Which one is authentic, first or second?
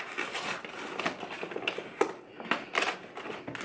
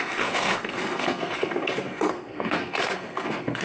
first